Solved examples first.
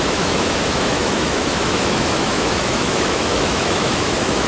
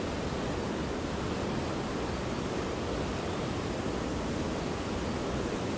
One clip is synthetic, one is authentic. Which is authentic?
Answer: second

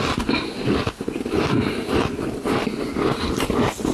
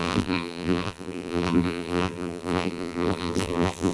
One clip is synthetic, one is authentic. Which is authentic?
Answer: first